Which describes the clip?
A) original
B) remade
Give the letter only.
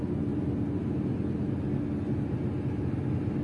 A